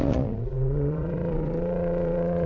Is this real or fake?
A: fake